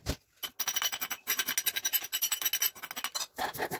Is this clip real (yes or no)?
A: yes